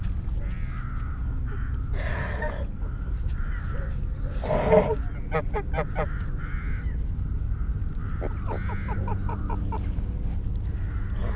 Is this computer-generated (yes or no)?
no